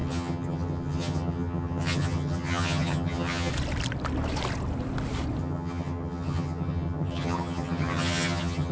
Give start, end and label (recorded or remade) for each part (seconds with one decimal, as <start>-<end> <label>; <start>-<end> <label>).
0.0-3.5 remade; 3.5-5.4 recorded; 5.4-8.7 remade